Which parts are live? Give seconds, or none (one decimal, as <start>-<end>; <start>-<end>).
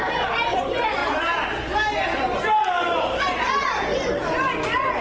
0.0-5.0